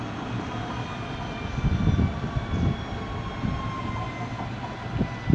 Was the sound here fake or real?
real